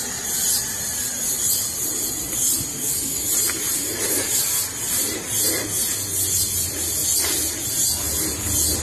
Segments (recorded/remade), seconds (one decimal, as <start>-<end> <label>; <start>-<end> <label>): 0.0-2.7 recorded; 2.7-3.3 remade; 3.3-4.1 recorded; 4.1-4.6 remade; 4.6-8.8 recorded